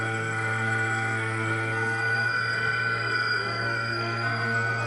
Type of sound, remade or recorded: remade